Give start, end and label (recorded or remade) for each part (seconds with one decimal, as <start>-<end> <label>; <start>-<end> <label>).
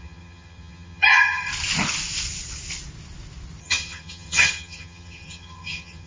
0.0-1.5 remade; 1.5-3.6 recorded; 3.6-6.1 remade